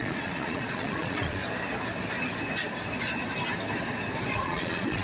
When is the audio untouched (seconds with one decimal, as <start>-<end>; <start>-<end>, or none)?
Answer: 1.4-4.4